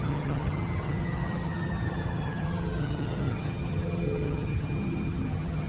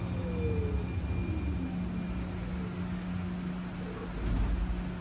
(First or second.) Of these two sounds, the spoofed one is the first